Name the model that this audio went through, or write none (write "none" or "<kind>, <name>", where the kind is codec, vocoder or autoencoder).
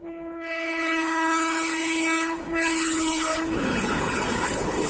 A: codec, HILCodec